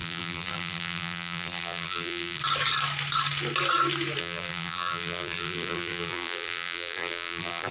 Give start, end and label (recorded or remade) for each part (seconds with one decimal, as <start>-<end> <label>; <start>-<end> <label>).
0.0-2.4 remade; 2.4-4.2 recorded; 4.2-7.7 remade